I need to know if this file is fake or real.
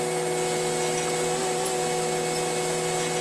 real